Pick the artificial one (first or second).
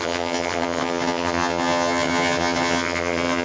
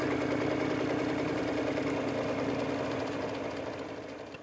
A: first